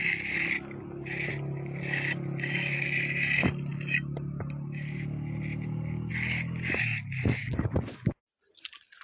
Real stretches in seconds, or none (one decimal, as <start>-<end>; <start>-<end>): 0.0-9.0

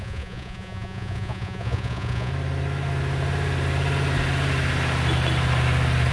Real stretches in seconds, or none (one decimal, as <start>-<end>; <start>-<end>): 2.3-6.1

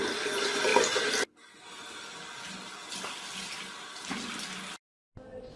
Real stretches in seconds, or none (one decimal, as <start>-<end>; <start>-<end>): 0.0-5.6